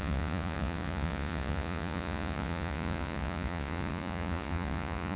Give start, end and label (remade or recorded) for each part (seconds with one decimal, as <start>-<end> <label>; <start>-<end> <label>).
0.0-5.2 remade